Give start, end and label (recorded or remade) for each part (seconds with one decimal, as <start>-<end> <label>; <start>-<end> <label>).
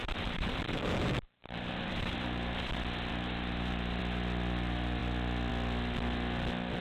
0.0-2.7 remade; 2.7-3.1 recorded; 3.1-4.0 remade; 4.0-6.8 recorded